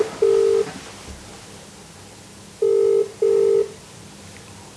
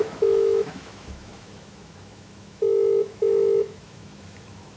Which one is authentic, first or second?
first